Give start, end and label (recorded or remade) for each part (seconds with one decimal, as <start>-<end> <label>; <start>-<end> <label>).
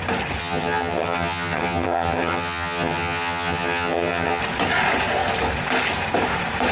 0.0-0.4 recorded; 0.4-4.4 remade; 4.4-6.7 recorded